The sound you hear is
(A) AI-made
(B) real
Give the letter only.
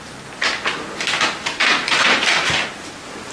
B